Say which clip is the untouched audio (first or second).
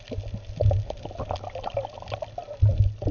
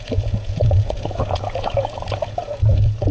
first